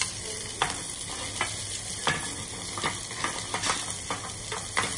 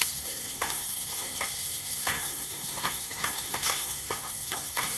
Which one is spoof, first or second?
second